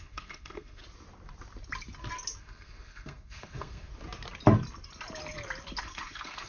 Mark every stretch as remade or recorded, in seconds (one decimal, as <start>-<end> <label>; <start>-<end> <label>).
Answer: 0.0-0.8 remade; 0.8-2.4 recorded; 2.4-3.9 remade; 3.9-5.8 recorded; 5.8-6.5 remade